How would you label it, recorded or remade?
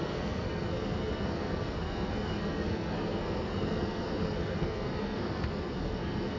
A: remade